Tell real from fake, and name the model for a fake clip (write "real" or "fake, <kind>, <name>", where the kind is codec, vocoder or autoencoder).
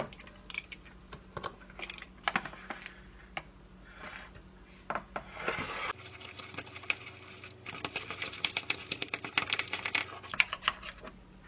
real